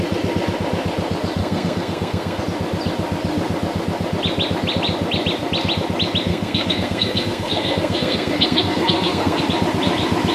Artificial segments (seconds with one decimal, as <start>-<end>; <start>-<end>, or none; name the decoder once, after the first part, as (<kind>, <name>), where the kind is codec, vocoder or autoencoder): 1.4-2.4 (codec, SNAC); 6.3-9.4